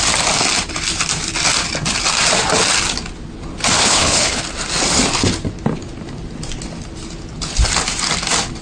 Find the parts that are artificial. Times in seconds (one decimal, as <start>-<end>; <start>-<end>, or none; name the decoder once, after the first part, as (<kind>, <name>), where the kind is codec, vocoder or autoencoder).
3.8-4.4 (codec, HILCodec)